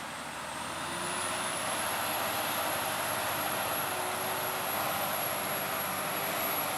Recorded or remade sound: recorded